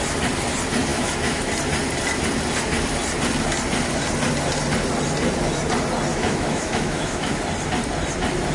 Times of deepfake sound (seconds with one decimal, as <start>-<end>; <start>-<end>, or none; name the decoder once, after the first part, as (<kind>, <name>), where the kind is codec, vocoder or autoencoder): 0.9-1.5 (autoencoder, DAC-VAE); 6.1-7.3